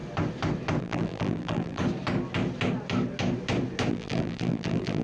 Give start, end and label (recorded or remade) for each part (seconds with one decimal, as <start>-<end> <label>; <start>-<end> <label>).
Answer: 0.0-0.8 recorded; 0.8-1.8 remade; 1.8-3.9 recorded; 3.9-5.0 remade